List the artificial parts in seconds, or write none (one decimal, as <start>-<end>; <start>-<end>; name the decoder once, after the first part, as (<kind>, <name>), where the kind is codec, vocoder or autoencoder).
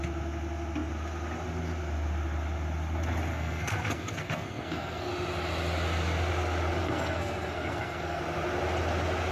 3.3-5.1 (codec, SNAC); 6.8-8.2